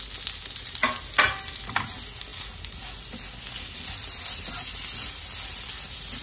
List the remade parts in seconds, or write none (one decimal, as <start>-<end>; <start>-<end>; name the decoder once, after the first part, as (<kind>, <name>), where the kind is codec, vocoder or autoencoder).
none